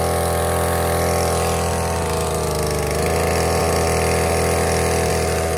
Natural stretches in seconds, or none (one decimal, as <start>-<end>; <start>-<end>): 0.0-5.6